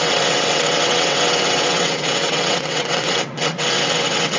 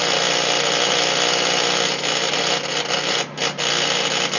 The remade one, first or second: first